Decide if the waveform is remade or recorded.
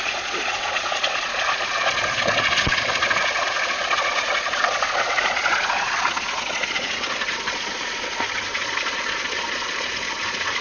remade